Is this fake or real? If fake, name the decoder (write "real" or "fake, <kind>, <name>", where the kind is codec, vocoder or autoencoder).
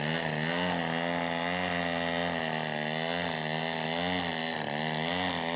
real